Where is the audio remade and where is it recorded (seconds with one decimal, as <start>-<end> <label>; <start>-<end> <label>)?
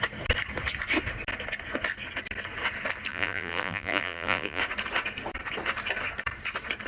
0.0-3.1 recorded; 3.1-4.6 remade; 4.6-6.9 recorded